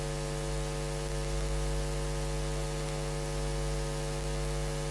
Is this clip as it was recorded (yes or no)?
yes